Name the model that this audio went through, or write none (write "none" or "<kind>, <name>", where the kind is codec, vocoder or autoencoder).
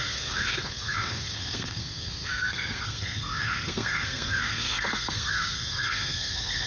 codec, SNAC